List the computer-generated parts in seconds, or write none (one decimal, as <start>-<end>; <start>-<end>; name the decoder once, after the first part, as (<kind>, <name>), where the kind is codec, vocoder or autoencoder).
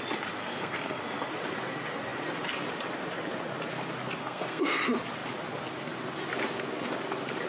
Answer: 0.4-1.0 (codec, SNAC); 4.2-4.8